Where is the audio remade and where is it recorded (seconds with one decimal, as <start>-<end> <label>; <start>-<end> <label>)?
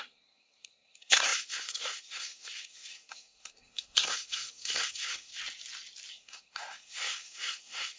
0.0-5.3 remade; 5.3-6.1 recorded; 6.1-8.0 remade